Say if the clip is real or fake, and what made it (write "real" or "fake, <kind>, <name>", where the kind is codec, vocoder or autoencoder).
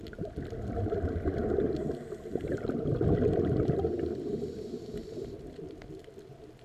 real